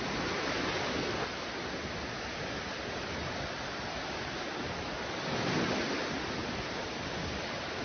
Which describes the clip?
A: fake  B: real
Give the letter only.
B